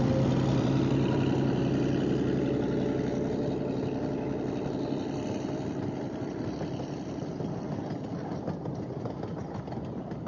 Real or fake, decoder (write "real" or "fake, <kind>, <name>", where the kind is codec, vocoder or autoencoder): real